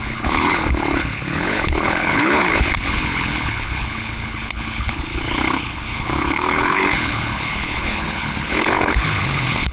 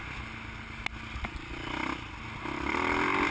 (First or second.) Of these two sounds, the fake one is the first